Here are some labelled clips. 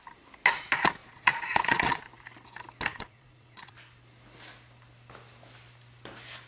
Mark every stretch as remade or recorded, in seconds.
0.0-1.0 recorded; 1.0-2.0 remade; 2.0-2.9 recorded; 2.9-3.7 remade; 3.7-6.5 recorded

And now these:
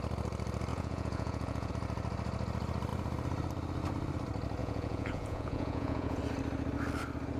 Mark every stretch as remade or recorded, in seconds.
0.0-0.7 recorded; 0.7-1.7 remade; 1.7-4.6 recorded; 4.6-6.2 remade; 6.2-7.4 recorded

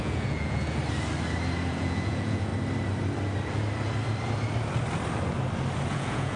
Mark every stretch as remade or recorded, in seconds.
0.0-0.8 remade; 0.8-1.7 recorded; 1.7-2.5 remade; 2.5-5.9 recorded; 5.9-6.4 remade

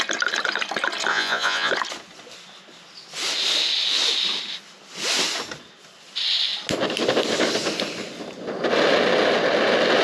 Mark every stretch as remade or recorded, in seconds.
0.0-1.1 recorded; 1.1-1.7 remade; 1.7-10.0 recorded

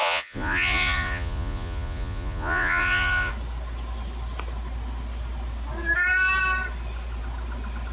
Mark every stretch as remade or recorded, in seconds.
0.0-3.3 remade; 3.3-7.9 recorded

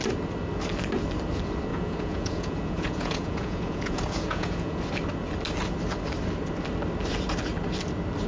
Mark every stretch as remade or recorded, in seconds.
0.0-1.7 recorded; 1.7-4.8 remade; 4.8-8.3 recorded

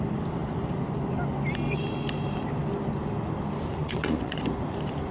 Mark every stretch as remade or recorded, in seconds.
0.0-3.8 recorded; 3.8-4.4 remade; 4.4-5.1 recorded